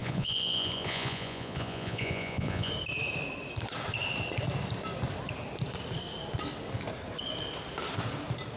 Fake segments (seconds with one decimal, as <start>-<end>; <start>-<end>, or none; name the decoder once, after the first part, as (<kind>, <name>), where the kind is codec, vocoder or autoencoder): 0.0-2.7 (vocoder, Vocos)

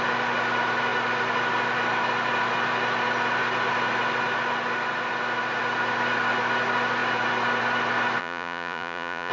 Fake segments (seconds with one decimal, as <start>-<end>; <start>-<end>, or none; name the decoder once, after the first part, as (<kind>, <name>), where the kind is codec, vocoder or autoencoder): 8.2-9.3 (vocoder, Vocos)

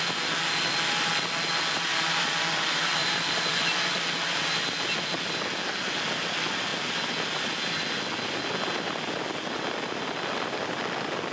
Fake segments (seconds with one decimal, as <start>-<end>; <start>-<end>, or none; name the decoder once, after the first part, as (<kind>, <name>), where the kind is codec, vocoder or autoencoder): none

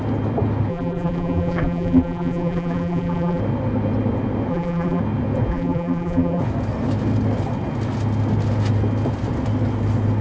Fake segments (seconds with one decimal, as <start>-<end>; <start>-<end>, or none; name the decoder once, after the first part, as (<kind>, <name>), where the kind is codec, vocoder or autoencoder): 0.7-3.4 (vocoder, BigVGAN v2); 4.5-5.0; 5.5-6.4

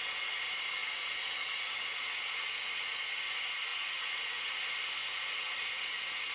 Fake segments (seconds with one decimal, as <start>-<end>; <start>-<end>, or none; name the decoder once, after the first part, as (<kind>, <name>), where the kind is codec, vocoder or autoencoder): 0.8-3.2 (vocoder, Vocos); 3.7-4.6; 5.0-6.3